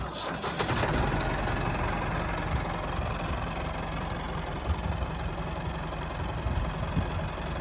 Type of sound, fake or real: real